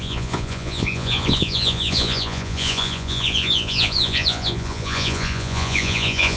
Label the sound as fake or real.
fake